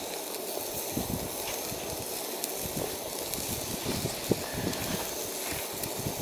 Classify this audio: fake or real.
real